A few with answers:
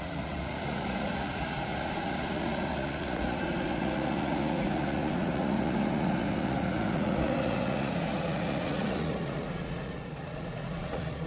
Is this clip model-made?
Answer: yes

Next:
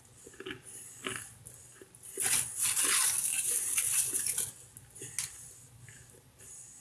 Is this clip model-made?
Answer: no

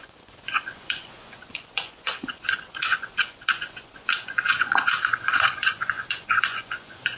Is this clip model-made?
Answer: yes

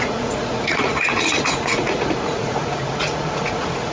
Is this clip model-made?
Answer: yes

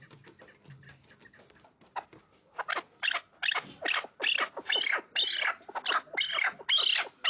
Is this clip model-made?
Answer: no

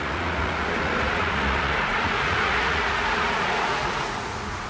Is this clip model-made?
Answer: yes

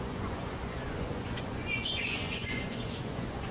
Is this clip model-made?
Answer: yes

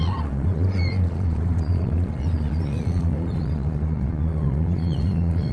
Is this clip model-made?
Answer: yes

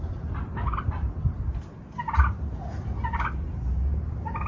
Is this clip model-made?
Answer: no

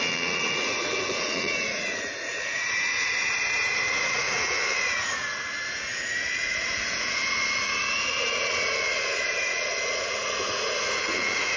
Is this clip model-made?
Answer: yes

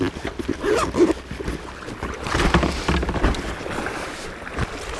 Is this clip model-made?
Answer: no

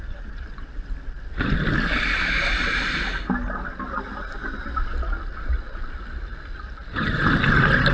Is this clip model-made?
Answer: no